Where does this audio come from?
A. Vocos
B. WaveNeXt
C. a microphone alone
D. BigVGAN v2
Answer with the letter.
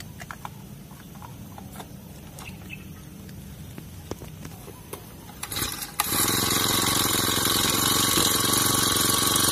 C